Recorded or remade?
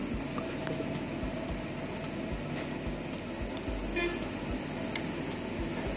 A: recorded